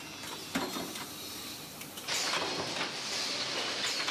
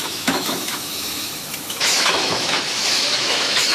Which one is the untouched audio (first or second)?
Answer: first